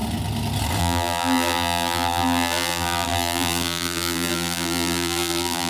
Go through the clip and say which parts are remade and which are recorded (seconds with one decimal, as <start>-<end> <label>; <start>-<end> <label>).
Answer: 0.0-0.8 recorded; 0.8-5.7 remade